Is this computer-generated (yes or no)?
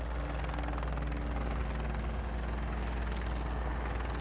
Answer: no